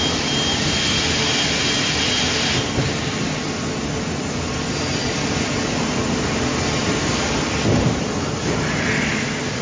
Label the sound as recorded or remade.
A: recorded